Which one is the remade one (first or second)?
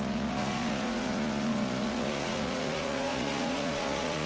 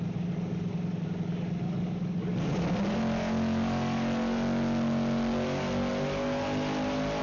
first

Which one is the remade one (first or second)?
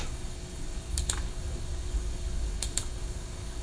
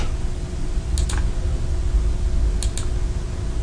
first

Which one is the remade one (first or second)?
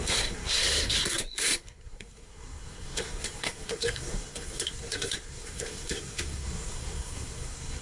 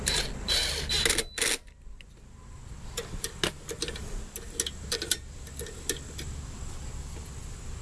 first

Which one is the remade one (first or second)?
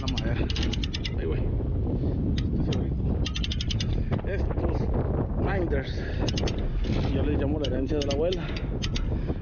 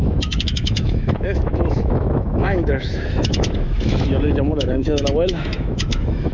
second